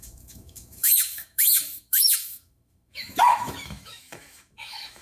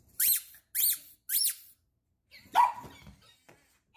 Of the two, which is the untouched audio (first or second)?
second